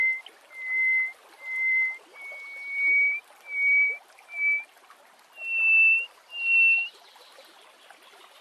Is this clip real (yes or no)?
yes